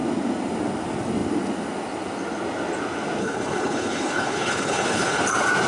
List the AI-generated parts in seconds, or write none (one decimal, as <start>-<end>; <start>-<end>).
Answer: 3.2-5.2